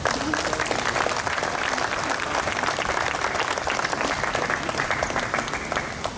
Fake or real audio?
real